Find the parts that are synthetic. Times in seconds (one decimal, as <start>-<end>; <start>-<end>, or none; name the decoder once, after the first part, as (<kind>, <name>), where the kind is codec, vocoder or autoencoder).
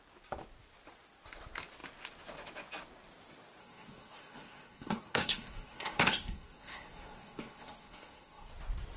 3.6-8.5 (codec, SNAC)